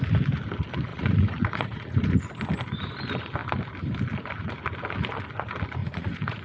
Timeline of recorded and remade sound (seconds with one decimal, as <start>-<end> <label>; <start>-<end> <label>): 0.0-0.9 recorded; 0.9-2.2 remade; 2.2-5.8 recorded; 5.8-6.4 remade